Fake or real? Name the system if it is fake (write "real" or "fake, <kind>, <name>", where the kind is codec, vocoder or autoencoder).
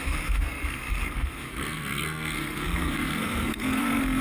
fake, codec, SNAC